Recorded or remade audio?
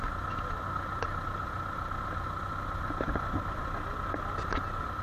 recorded